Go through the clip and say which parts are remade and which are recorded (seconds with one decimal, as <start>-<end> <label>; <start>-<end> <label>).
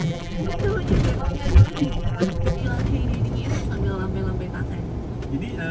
0.0-0.6 remade; 0.6-1.2 recorded; 1.2-2.6 remade; 2.6-5.7 recorded